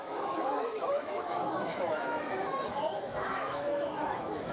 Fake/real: fake